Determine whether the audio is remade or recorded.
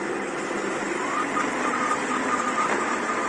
recorded